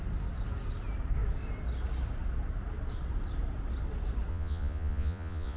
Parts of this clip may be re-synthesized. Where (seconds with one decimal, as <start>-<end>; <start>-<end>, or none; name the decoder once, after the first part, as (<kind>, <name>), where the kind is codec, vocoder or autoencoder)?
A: 4.3-5.6 (vocoder, Vocos)